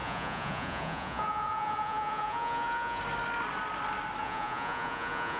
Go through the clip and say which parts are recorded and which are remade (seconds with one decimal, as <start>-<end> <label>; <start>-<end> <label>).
0.0-3.0 remade; 3.0-4.2 recorded; 4.2-5.4 remade